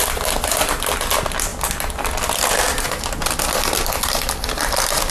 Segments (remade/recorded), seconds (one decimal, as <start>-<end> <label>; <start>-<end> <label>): 0.0-5.1 recorded